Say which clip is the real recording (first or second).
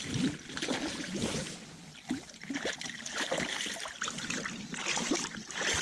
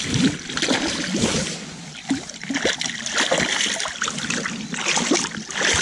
second